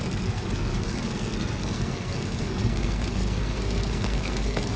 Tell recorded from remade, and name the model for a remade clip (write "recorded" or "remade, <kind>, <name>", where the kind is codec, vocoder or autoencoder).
remade, codec, SNAC